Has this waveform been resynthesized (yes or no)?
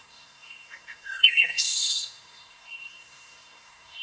yes